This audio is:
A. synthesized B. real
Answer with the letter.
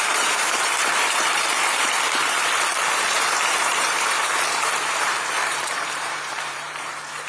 A